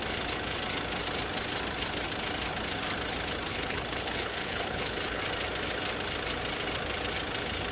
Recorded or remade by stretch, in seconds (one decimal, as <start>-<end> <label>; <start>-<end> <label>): 0.0-3.5 recorded; 3.5-5.2 remade; 5.2-7.7 recorded